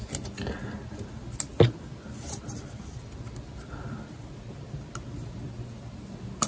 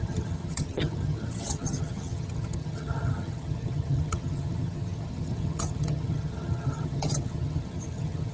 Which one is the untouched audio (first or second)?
first